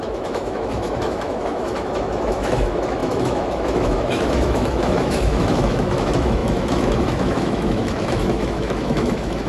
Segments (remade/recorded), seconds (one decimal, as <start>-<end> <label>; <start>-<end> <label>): 0.0-9.5 remade

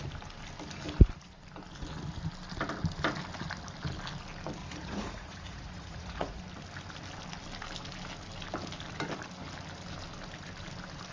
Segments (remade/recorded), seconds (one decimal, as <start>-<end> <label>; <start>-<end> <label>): 0.0-4.6 recorded; 4.6-6.4 remade; 6.4-11.1 recorded

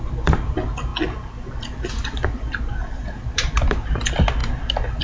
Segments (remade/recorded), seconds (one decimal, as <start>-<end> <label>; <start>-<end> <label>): 0.0-0.9 remade; 0.9-1.6 recorded; 1.6-5.0 remade

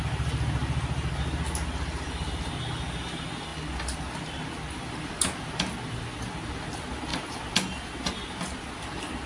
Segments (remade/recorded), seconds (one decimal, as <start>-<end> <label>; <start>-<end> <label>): 0.0-9.3 recorded

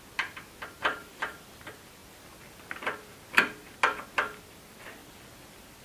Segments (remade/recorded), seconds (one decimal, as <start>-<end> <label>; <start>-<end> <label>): 0.0-1.0 recorded; 1.0-1.6 remade; 1.6-5.0 recorded; 5.0-5.8 remade